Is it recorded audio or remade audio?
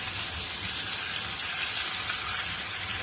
recorded